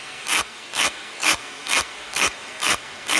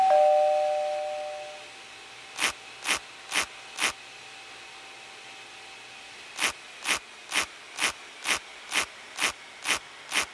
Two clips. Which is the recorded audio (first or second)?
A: second